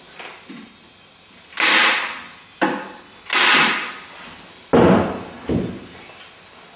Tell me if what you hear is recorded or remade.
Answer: recorded